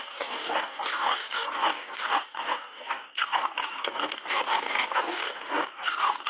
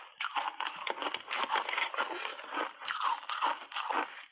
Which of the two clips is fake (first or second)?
first